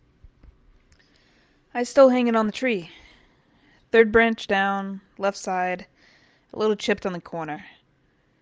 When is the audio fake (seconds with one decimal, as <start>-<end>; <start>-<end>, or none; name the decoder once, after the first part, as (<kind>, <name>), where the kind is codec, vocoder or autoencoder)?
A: 3.1-4.0 (vocoder, BigVGAN v2); 5.9-8.4